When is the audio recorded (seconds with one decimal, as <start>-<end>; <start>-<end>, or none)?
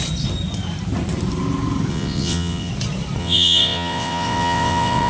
0.0-1.9; 2.7-3.2